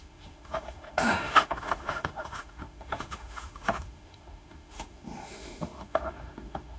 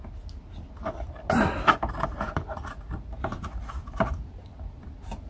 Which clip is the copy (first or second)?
first